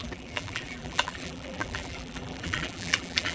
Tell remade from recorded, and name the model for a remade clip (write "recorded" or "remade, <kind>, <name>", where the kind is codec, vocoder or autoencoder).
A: remade, vocoder, BigVGAN v2